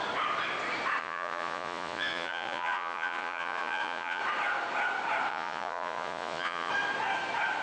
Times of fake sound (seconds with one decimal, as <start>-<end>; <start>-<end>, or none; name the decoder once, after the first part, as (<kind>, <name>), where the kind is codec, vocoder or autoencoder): 1.0-4.2 (vocoder, Vocos); 5.3-6.7

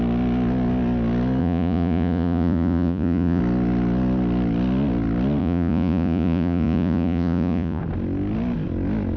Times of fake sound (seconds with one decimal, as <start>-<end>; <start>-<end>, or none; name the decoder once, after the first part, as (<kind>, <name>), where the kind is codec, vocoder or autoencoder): 1.4-3.4 (vocoder, Vocos); 5.4-7.8

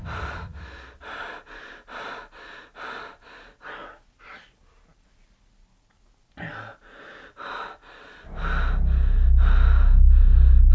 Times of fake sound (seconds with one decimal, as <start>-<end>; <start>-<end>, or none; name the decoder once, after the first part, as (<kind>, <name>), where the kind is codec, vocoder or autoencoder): none

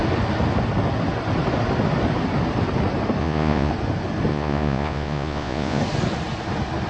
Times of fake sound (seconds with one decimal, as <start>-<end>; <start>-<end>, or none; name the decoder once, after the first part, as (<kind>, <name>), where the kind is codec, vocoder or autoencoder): 3.2-3.7 (vocoder, Vocos); 4.3-5.8